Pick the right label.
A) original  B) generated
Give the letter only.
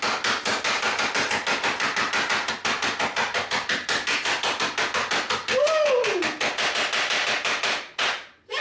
A